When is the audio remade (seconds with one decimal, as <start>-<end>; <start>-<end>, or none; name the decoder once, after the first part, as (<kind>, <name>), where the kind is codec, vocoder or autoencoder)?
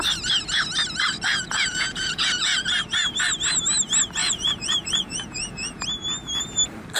1.3-2.7 (vocoder, Vocos); 4.2-5.8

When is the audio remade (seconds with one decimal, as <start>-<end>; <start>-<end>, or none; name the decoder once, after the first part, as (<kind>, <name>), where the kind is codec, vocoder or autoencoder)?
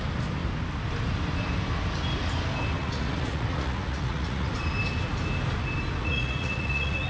2.8-4.5 (vocoder, Vocos); 6.0-7.1